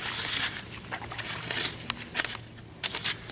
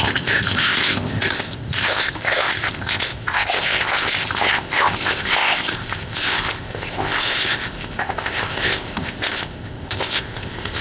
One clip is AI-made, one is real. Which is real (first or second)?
first